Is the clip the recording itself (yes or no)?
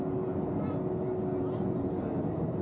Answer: yes